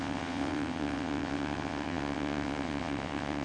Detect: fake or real fake